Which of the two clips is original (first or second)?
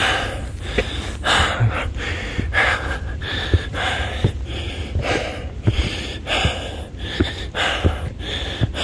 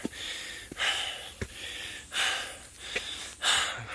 second